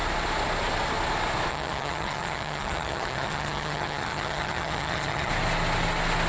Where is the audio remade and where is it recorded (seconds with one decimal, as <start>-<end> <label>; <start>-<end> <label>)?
0.0-1.5 recorded; 1.5-5.3 remade; 5.3-6.3 recorded

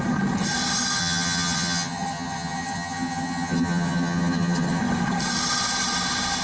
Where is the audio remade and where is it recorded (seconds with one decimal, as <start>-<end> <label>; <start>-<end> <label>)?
0.0-1.0 recorded; 1.0-4.8 remade; 4.8-6.4 recorded